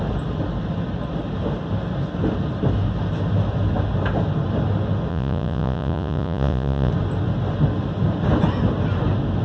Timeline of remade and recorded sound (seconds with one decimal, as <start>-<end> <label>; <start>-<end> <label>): 0.0-5.1 recorded; 5.1-6.9 remade; 6.9-9.4 recorded